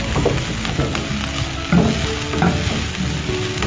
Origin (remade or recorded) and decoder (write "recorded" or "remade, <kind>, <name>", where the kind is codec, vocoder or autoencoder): recorded